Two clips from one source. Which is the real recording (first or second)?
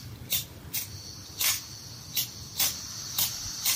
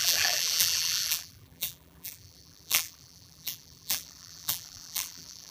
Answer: first